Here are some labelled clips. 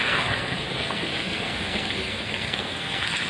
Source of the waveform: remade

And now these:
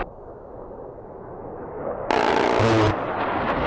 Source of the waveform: recorded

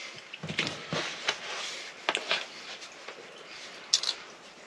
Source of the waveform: recorded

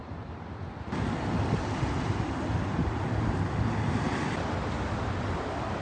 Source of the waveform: recorded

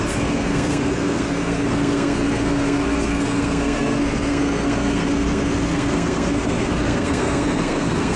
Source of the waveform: remade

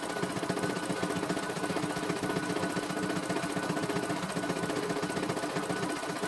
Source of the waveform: recorded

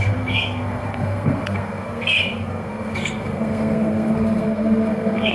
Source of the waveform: remade